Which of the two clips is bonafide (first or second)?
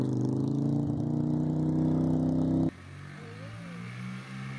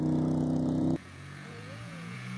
first